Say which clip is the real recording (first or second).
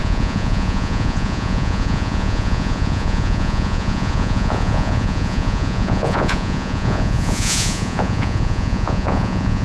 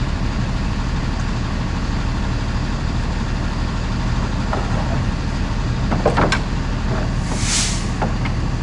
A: second